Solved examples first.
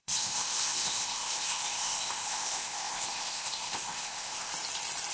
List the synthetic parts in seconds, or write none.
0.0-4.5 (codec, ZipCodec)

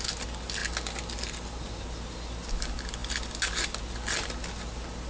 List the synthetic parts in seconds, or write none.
none